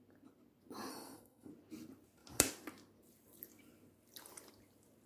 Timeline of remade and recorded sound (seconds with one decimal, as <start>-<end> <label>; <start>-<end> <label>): 0.0-0.9 recorded; 0.9-1.5 remade; 1.5-5.1 recorded